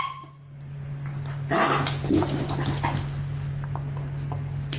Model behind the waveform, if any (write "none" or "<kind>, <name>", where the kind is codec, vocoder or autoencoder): none